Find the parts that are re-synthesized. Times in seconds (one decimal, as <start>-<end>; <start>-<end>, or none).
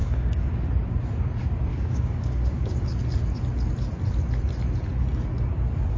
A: 0.0-0.5; 1.7-2.8